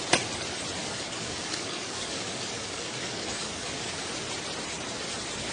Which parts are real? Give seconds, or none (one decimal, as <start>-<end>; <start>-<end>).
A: 0.0-0.8; 4.1-5.5